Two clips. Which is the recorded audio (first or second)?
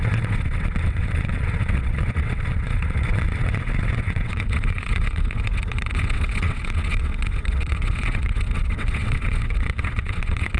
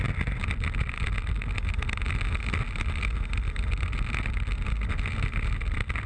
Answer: second